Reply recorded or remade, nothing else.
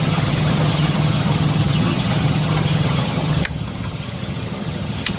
remade